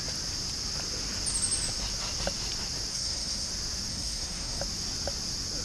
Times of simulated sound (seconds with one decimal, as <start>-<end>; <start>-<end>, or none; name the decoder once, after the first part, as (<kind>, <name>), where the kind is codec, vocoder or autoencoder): 2.9-3.5 (codec, SNAC); 3.9-4.6